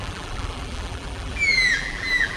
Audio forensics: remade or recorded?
remade